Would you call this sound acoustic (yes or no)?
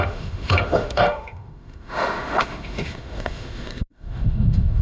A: no